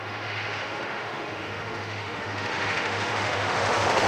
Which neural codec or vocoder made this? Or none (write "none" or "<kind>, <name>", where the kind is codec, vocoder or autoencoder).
autoencoder, DAC-VAE